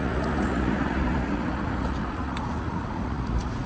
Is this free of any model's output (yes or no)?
no